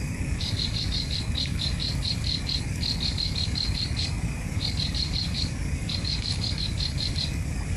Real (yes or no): no